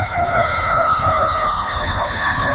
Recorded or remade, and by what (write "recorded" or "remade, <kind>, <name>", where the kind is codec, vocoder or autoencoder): remade, codec, HILCodec